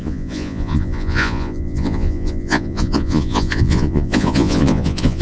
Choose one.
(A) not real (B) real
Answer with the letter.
A